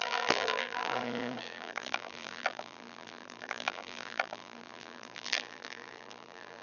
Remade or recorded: remade